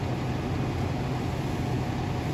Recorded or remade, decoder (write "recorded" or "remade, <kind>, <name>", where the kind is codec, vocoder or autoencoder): recorded